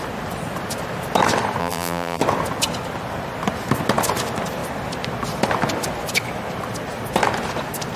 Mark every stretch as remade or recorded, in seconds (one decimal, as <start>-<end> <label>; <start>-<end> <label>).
0.0-1.6 recorded; 1.6-2.2 remade; 2.2-8.0 recorded